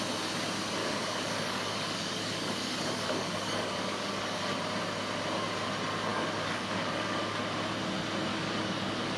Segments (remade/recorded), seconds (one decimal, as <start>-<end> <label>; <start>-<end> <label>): 0.0-0.8 recorded; 0.8-4.4 remade; 4.4-6.1 recorded; 6.1-7.4 remade; 7.4-8.3 recorded; 8.3-9.2 remade